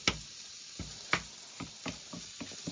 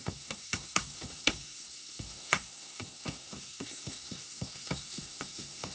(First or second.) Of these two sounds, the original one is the first